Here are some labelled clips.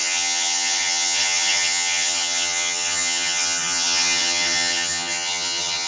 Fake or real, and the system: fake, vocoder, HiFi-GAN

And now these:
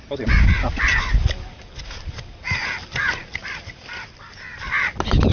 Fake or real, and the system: real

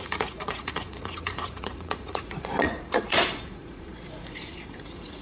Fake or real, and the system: fake, vocoder, Vocos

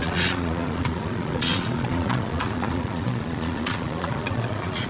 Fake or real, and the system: fake, vocoder, Vocos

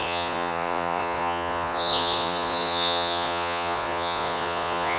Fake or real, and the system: fake, vocoder, Vocos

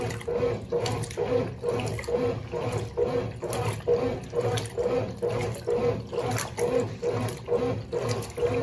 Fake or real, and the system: real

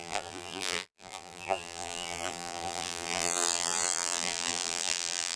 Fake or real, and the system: fake, vocoder, BigVGAN v2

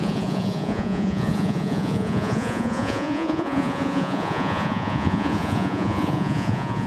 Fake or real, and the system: fake, vocoder, Vocos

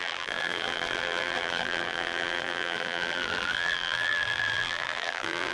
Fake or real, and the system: fake, vocoder, BigVGAN v2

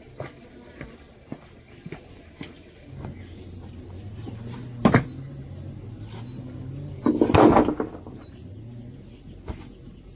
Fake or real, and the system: real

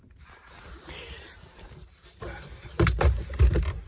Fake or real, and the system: fake, vocoder, BigVGAN v2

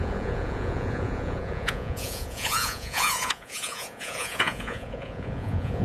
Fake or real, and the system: fake, vocoder, Vocos